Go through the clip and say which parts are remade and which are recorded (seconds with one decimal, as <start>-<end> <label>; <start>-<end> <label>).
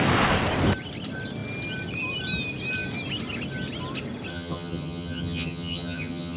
0.0-4.3 recorded; 4.3-6.4 remade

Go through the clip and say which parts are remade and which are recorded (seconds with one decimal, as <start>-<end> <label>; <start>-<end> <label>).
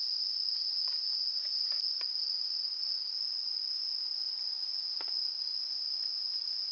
0.0-6.7 recorded